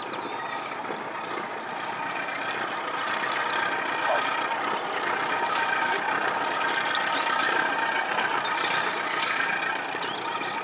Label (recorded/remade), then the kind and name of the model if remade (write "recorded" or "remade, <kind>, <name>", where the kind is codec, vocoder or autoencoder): recorded